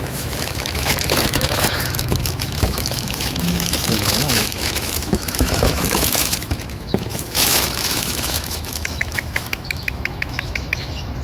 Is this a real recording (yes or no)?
no